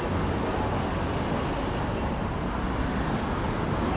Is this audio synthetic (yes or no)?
no